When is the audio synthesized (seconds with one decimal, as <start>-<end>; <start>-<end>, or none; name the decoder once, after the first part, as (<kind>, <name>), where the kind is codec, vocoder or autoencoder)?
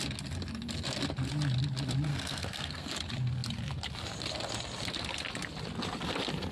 2.1-2.9 (codec, SNAC)